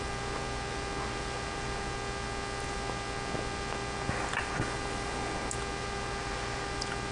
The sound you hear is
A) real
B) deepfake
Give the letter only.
A